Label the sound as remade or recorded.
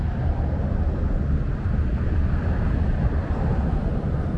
recorded